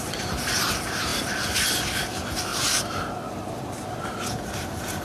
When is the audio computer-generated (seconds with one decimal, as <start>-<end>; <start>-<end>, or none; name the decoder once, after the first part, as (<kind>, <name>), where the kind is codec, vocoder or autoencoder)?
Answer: none